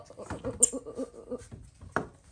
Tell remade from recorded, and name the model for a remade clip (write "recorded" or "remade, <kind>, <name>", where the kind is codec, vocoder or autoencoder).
recorded